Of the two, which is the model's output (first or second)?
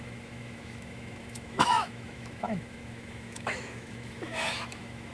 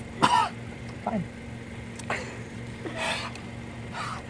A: first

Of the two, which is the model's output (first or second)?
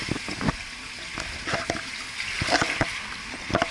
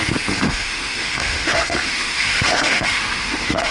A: second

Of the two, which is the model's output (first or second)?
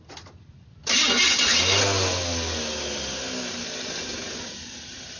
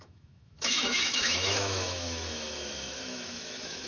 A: second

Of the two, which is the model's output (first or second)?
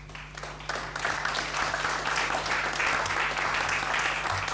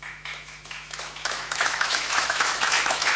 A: second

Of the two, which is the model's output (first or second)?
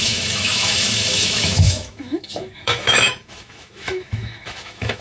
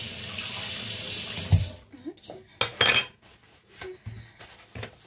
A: first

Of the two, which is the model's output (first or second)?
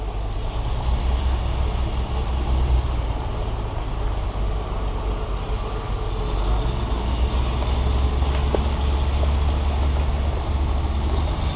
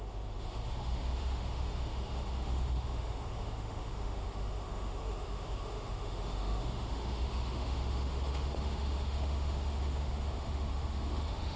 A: second